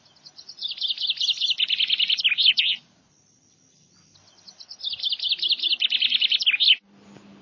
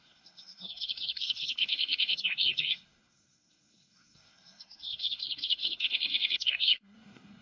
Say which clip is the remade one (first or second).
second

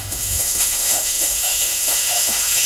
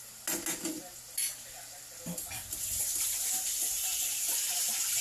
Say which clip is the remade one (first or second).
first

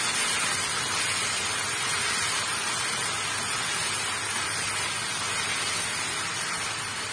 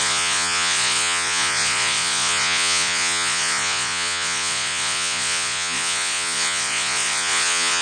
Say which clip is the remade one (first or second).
second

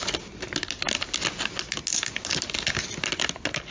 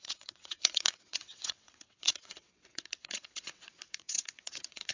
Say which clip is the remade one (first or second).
second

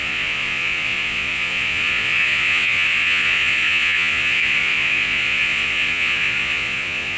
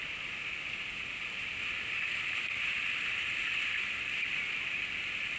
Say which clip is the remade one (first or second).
first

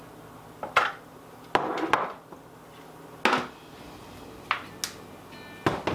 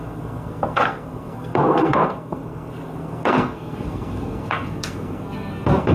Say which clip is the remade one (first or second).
second